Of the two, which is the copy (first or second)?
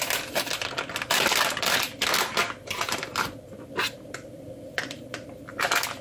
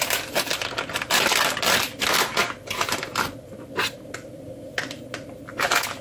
first